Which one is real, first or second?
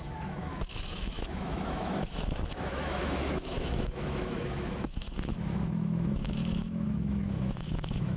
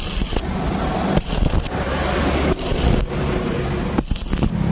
second